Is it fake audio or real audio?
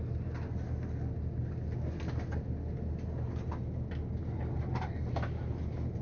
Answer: real